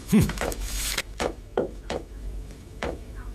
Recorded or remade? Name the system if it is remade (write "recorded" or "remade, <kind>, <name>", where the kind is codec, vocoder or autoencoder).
remade, autoencoder, DAC-VAE